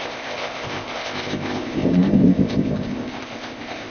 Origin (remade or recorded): remade